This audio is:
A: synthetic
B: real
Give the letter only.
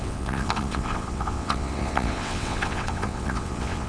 A